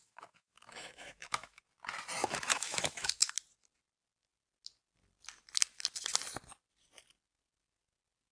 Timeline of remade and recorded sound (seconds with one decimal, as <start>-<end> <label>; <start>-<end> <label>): 0.0-1.6 remade; 1.6-2.2 recorded; 2.2-3.3 remade; 3.3-8.3 recorded